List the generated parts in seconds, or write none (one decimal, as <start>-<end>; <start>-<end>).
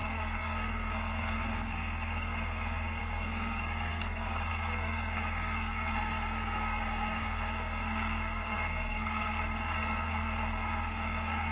0.0-11.5